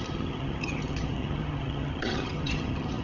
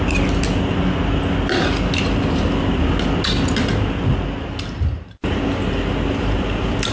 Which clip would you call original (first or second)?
second